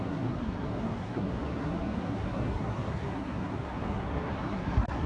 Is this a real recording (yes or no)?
no